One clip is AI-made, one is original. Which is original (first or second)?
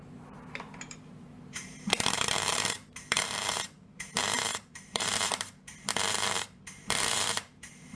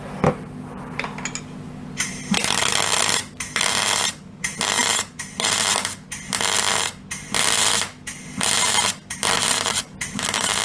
second